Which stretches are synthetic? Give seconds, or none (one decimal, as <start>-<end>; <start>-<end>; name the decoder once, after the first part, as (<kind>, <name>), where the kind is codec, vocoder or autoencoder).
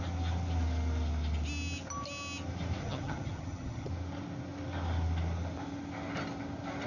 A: 2.8-3.9 (vocoder, HiFi-GAN)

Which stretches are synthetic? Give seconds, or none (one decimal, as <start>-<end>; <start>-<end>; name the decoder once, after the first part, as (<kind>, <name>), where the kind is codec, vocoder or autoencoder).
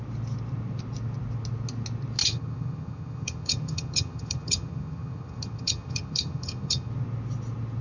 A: 2.2-6.9 (vocoder, HiFi-GAN)